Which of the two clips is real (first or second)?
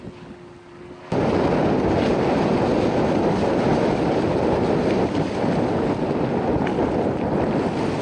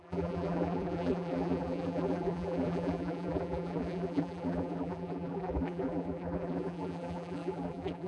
first